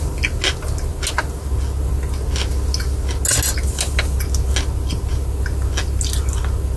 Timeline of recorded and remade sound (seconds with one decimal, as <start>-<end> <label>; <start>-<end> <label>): 0.0-6.8 recorded